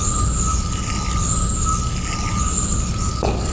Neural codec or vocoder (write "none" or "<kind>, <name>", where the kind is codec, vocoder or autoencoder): none